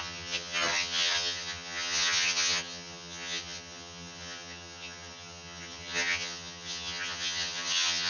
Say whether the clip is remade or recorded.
remade